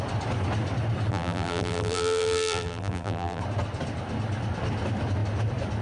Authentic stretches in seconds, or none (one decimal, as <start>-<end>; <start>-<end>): 0.0-1.1; 3.4-5.8